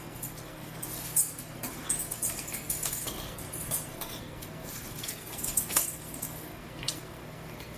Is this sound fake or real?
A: fake